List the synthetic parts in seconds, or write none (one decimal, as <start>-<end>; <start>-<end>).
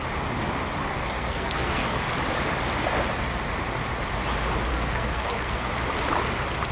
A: 0.9-2.1; 4.7-5.7